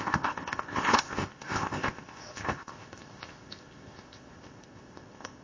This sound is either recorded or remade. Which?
remade